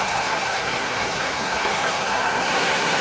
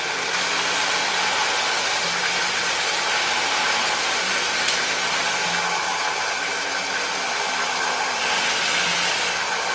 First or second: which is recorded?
second